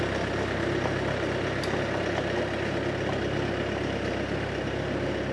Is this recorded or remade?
recorded